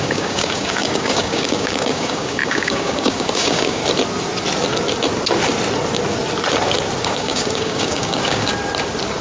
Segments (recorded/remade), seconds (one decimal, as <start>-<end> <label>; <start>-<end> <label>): 0.0-3.8 remade; 3.8-7.0 recorded; 7.0-8.5 remade; 8.5-9.2 recorded